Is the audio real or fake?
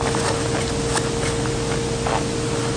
real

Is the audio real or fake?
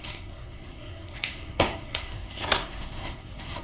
fake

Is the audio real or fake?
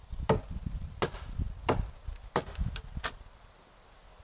real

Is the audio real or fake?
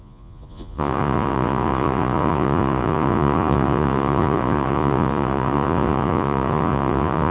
fake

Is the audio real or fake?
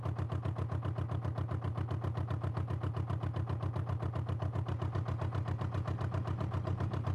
real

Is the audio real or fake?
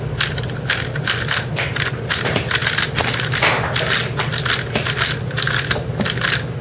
real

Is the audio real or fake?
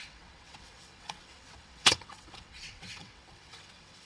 fake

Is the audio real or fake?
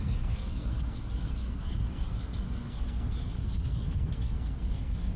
fake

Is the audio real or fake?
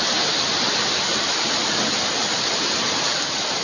real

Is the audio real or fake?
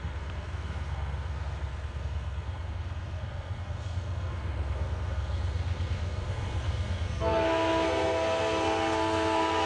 fake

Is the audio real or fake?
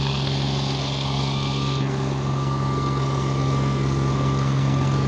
fake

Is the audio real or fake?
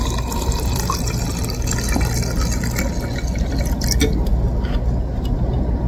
real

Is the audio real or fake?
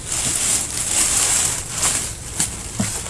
real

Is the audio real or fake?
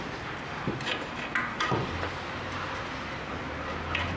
real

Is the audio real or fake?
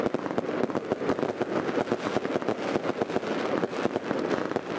real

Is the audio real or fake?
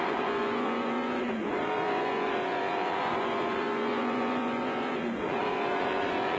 fake